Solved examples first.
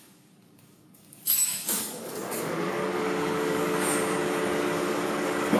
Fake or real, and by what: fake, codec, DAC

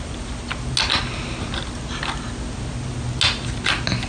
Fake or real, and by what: real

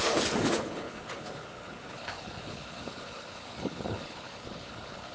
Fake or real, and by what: fake, codec, HILCodec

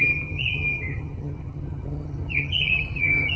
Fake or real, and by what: fake, vocoder, HiFi-GAN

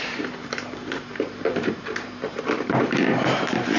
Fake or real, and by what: fake, vocoder, BigVGAN v2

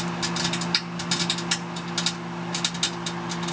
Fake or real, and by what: real